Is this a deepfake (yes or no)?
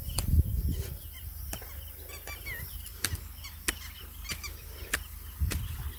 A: no